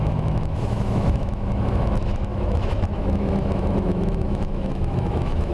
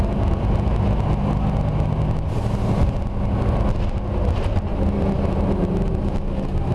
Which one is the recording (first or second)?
second